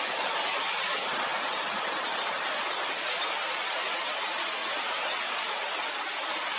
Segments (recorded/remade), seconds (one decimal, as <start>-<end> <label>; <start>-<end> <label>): 0.0-4.6 recorded; 4.6-5.3 remade; 5.3-6.6 recorded